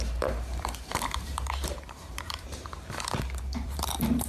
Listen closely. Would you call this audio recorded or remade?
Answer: remade